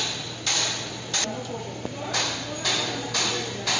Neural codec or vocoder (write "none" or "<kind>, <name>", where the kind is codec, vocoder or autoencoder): none